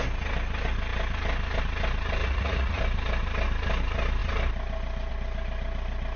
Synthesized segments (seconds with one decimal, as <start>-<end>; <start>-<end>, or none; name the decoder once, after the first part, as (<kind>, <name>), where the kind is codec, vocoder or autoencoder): 2.2-2.8 (vocoder, Vocos)